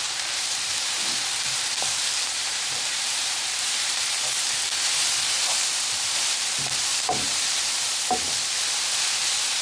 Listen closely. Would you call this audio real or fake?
fake